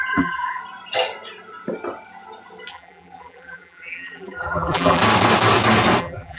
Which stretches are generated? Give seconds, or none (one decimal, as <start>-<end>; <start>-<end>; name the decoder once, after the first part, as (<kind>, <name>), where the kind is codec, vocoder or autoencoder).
0.0-0.6 (vocoder, BigVGAN v2); 2.7-5.0; 6.0-6.4